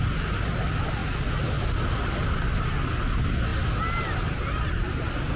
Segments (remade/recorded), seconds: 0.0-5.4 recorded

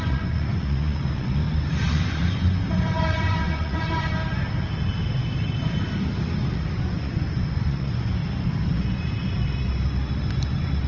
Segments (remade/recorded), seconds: 0.0-1.4 remade; 1.4-1.9 recorded; 1.9-4.2 remade; 4.2-6.8 recorded; 6.8-8.2 remade; 8.2-10.9 recorded

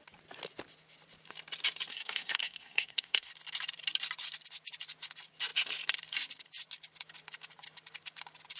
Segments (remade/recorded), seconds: 0.0-1.9 recorded; 1.9-3.3 remade; 3.3-8.6 recorded

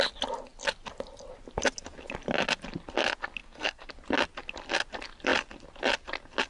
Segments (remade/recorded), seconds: 0.0-3.4 recorded; 3.4-3.9 remade; 3.9-6.5 recorded

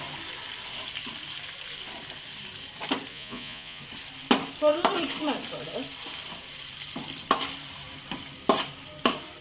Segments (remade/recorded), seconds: 0.0-3.1 recorded; 3.1-3.8 remade; 3.8-9.4 recorded

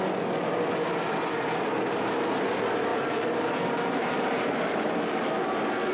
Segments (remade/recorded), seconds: 0.0-2.9 recorded; 2.9-4.9 remade; 4.9-5.9 recorded

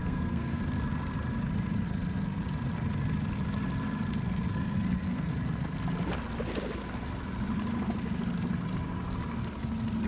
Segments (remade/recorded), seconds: 0.0-0.6 remade; 0.6-4.5 recorded; 4.5-5.3 remade; 5.3-10.1 recorded